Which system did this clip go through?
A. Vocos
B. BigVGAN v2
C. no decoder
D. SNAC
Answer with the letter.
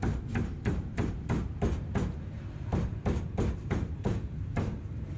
B